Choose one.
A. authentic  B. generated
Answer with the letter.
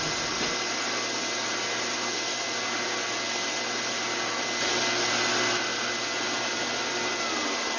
A